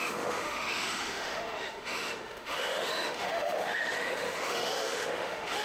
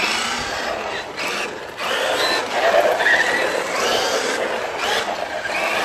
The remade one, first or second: first